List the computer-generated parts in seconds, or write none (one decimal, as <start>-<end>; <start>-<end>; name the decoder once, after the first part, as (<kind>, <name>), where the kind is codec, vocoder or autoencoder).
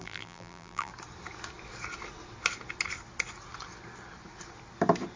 0.0-0.9 (vocoder, BigVGAN v2)